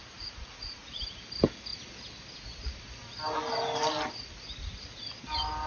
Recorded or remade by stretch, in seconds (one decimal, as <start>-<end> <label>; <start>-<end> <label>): 0.0-1.0 remade; 1.0-5.7 recorded